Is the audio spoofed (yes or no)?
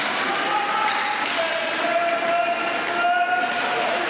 no